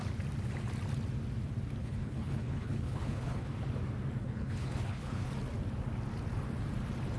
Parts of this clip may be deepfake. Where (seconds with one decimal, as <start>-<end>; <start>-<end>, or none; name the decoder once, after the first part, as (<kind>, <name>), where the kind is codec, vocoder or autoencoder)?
1.8-3.5 (codec, HILCodec); 4.2-5.3